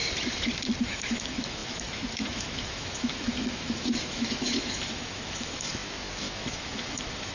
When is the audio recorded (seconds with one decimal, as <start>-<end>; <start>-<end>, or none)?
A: 0.0-0.8; 5.7-6.2